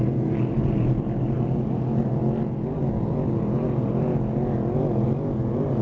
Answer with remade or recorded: recorded